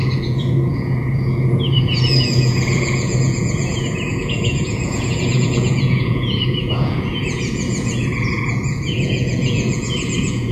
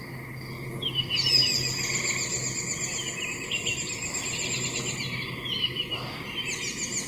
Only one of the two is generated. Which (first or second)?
first